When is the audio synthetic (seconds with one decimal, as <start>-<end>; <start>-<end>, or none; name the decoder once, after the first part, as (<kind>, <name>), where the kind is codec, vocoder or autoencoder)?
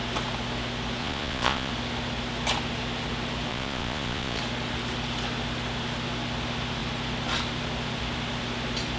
1.0-1.7 (vocoder, Vocos); 3.5-4.4